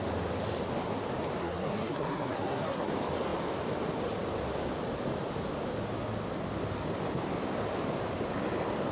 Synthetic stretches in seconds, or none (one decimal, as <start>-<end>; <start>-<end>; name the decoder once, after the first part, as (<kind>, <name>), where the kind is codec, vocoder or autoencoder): 1.4-2.9 (codec, SNAC)